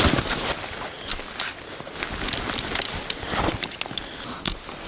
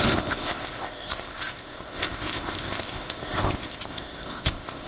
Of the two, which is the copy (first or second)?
second